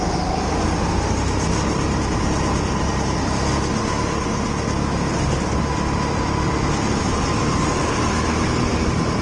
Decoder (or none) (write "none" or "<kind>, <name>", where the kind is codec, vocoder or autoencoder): none